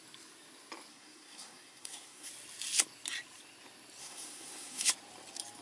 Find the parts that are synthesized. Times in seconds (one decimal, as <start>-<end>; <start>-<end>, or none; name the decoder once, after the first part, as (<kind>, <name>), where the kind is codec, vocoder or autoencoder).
0.9-2.3 (codec, SNAC); 4.0-4.9